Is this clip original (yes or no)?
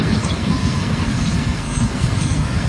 no